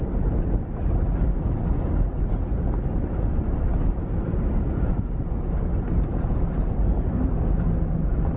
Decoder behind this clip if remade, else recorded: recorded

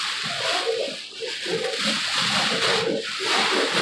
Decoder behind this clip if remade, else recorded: recorded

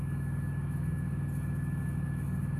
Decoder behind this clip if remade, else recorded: recorded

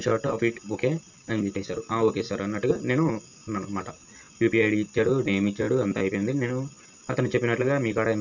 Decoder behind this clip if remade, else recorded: recorded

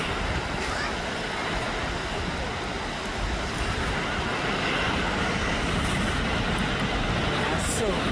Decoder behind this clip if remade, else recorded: recorded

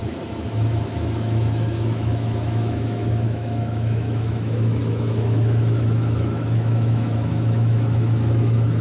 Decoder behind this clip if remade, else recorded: remade, autoencoder, DAC-VAE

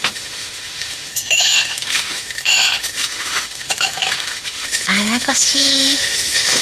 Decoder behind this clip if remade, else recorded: remade, autoencoder, DAC-VAE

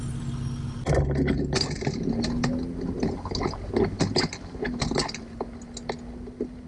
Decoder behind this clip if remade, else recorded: recorded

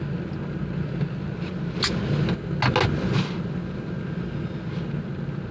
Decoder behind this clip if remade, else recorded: recorded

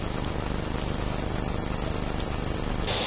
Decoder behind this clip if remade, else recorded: recorded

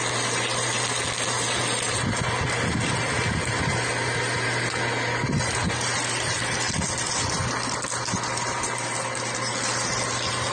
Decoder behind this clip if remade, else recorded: recorded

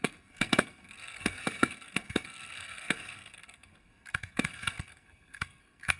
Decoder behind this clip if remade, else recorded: remade, codec, SNAC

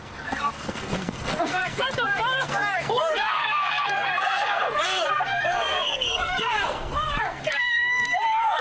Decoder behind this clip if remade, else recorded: remade, codec, SNAC